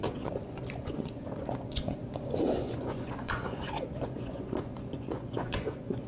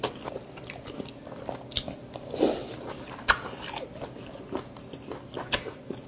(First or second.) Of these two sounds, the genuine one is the second